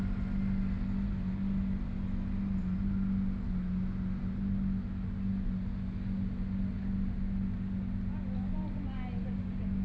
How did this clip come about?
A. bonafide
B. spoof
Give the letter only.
A